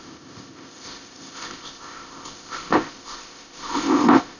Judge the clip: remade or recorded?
remade